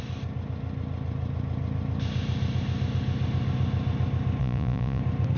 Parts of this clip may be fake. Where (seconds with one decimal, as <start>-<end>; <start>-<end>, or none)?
4.4-5.0